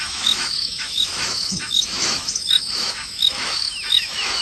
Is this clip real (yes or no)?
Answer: no